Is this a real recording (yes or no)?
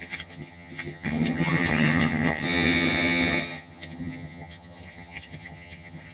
no